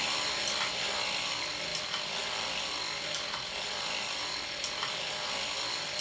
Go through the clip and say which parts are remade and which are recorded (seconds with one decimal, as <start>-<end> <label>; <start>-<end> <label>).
0.0-6.0 recorded